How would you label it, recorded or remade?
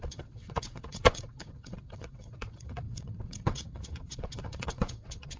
remade